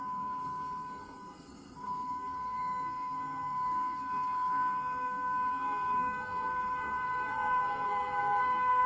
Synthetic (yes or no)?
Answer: yes